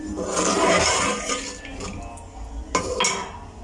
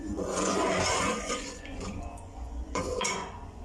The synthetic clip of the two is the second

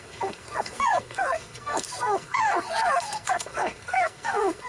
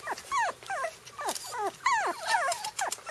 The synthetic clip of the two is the first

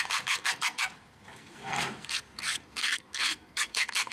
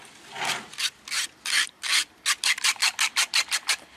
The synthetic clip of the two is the first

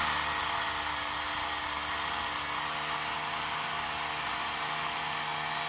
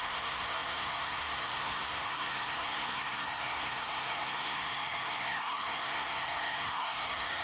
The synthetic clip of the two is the second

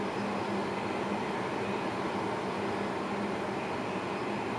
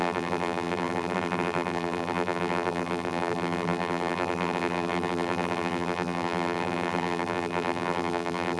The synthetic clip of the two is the second